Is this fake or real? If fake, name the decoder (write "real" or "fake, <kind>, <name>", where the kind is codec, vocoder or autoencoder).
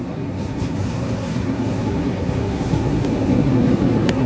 fake, codec, SNAC